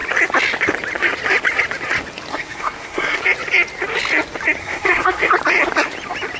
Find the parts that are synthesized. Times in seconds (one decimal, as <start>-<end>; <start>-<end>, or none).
2.3-3.2; 4.6-5.3